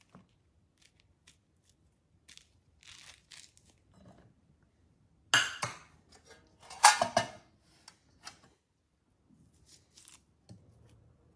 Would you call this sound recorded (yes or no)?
yes